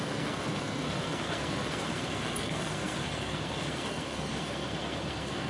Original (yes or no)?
no